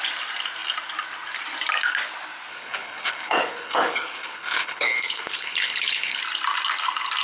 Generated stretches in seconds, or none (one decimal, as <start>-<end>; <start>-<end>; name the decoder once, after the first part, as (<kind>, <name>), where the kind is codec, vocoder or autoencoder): 2.5-6.2 (codec, HILCodec)